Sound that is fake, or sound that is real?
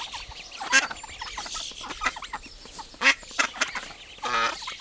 real